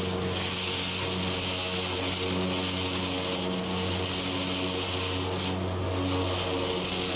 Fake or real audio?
real